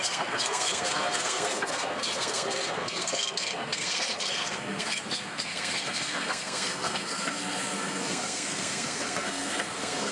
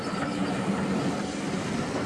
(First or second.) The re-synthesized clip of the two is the first